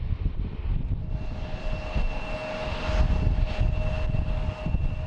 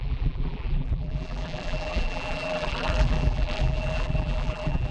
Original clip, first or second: first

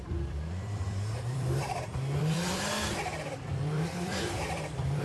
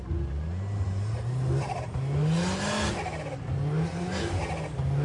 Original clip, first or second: second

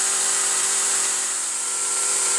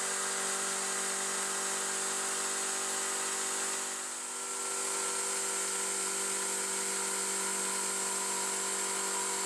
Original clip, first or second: second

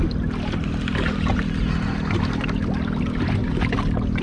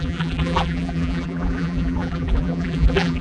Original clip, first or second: first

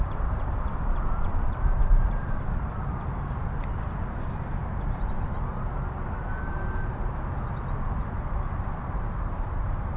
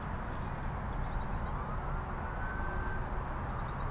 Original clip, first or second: second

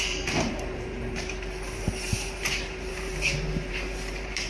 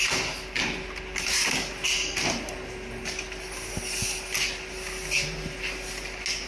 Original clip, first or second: second